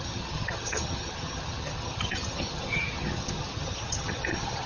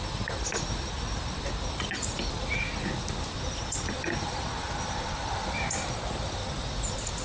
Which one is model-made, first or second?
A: first